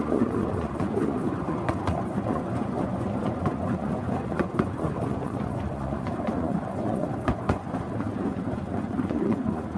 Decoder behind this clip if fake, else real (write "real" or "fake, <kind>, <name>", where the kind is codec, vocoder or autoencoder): fake, vocoder, Vocos